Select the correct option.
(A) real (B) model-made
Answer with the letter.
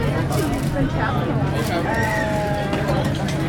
A